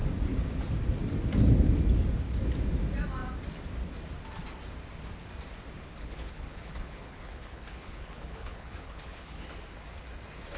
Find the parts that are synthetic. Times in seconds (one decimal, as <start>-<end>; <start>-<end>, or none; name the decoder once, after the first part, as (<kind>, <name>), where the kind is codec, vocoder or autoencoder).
5.8-9.5 (codec, HILCodec)